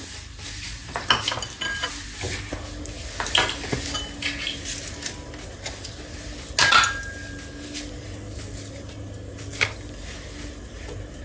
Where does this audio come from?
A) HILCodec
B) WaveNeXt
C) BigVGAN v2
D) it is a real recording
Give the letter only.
D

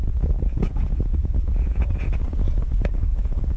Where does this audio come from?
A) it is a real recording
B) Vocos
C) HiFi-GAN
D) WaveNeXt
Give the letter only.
B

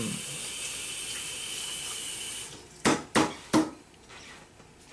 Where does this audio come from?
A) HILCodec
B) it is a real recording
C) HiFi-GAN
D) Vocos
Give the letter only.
B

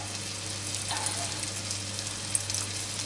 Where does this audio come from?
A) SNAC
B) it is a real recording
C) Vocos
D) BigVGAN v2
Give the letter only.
B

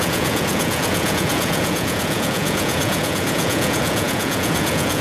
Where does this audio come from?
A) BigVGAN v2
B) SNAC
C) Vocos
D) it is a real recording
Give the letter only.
C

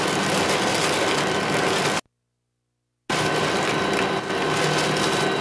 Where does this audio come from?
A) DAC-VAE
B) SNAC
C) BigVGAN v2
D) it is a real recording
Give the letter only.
D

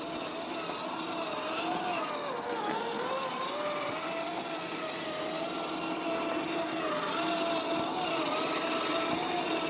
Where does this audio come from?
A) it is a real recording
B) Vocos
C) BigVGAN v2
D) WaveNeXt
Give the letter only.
A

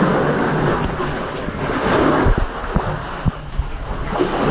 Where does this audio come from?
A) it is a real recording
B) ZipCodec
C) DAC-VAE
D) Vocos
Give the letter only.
A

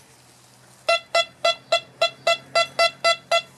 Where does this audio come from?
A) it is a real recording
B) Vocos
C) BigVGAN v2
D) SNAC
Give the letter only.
A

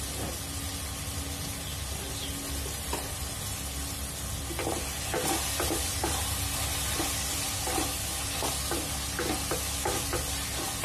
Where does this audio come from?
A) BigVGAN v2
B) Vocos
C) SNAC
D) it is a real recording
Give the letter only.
D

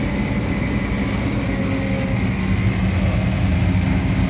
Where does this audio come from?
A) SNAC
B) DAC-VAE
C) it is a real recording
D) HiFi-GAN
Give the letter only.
C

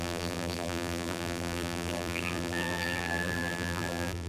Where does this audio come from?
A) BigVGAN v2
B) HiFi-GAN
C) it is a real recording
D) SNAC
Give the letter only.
A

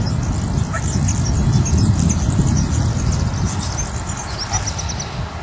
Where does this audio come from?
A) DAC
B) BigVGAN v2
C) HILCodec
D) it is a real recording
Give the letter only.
D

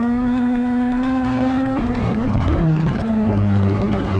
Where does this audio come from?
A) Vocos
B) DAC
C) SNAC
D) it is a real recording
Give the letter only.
C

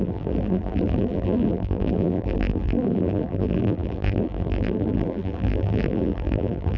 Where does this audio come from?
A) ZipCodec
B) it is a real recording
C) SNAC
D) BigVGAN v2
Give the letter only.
D